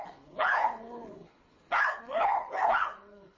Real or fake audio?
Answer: fake